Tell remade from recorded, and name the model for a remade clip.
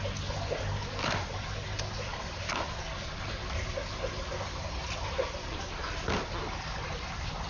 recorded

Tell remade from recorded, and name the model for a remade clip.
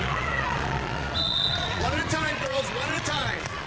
remade, vocoder, Vocos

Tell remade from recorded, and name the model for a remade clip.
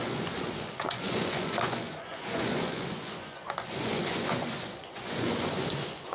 remade, vocoder, Vocos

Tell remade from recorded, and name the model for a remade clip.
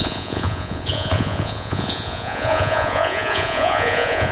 remade, vocoder, Vocos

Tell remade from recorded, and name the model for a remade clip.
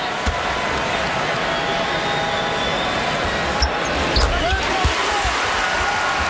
recorded